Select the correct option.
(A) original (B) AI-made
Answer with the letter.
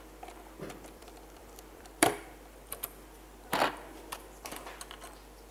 B